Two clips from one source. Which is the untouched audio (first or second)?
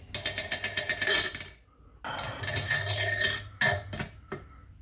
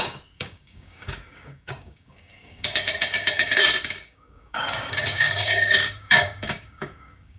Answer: first